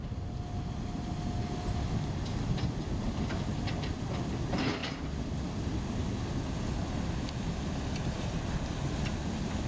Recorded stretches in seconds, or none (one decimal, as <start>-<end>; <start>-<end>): 0.0-9.7